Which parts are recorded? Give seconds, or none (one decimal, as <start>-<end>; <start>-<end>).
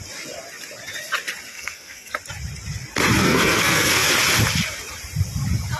0.0-1.5; 2.1-3.2; 4.1-5.8